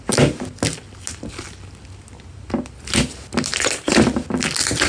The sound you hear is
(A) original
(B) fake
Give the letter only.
A